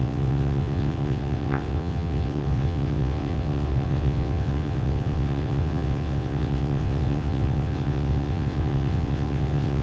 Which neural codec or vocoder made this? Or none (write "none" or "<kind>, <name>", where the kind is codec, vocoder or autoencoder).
vocoder, WaveNeXt